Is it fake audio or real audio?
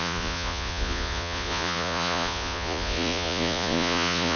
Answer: fake